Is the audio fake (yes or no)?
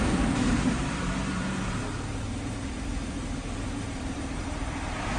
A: yes